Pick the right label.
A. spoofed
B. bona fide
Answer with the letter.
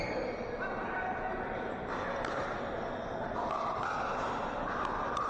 B